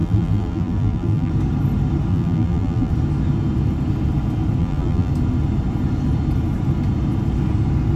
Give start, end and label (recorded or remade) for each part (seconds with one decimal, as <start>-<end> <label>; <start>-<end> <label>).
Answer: 0.0-1.3 remade; 1.3-2.1 recorded; 2.1-2.9 remade; 2.9-4.6 recorded; 4.6-5.1 remade; 5.1-8.0 recorded